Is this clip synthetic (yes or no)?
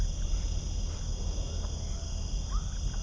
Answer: no